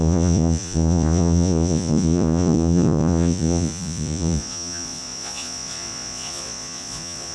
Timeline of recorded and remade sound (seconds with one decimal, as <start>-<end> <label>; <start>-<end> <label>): 0.0-7.3 remade